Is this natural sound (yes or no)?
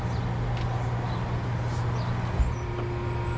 yes